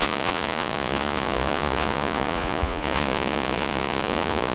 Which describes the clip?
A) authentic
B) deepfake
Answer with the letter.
B